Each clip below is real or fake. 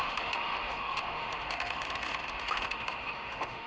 fake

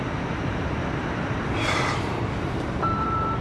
fake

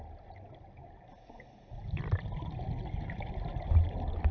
real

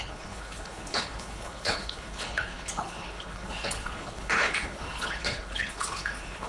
fake